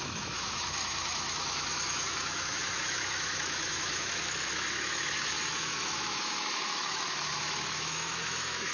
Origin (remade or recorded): remade